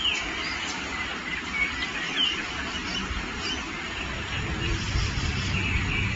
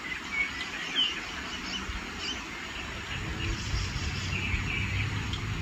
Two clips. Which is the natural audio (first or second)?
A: second